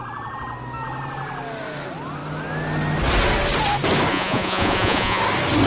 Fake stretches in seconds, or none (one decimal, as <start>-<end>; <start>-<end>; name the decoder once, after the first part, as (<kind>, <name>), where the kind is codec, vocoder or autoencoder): 4.1-5.2 (vocoder, Vocos)